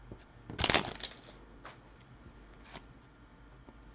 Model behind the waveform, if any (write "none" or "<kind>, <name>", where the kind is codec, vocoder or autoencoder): none